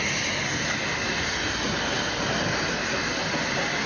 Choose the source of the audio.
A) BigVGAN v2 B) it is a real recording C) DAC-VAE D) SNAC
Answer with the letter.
B